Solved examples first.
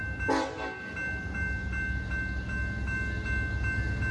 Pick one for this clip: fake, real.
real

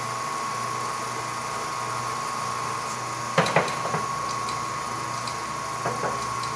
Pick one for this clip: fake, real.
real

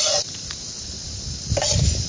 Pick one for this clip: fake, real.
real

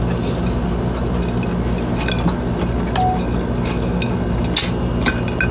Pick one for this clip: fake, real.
real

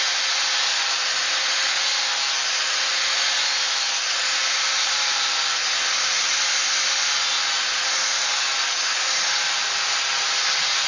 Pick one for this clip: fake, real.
real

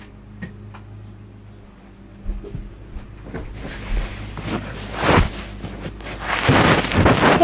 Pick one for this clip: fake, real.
real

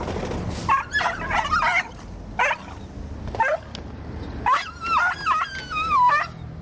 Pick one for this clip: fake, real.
real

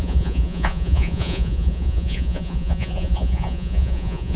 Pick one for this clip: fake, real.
fake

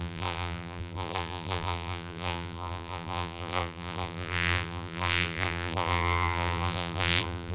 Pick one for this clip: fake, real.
fake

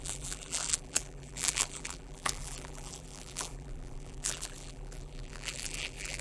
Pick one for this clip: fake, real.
fake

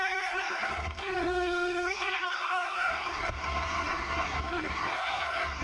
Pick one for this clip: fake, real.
fake